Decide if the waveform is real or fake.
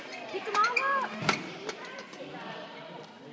real